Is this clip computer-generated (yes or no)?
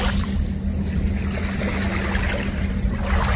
no